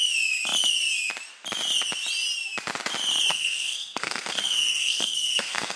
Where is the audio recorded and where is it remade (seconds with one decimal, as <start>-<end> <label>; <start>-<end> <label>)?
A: 0.0-3.3 recorded; 3.3-5.8 remade